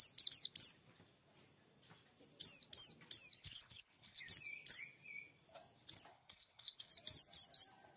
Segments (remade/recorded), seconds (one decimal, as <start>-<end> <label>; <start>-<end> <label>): 0.0-3.4 recorded; 3.4-4.2 remade; 4.2-6.1 recorded; 6.1-6.9 remade; 6.9-8.0 recorded